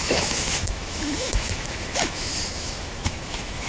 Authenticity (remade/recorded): remade